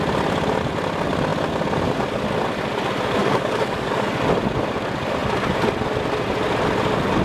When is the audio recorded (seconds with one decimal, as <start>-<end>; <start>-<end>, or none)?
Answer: 0.0-3.2; 4.1-7.2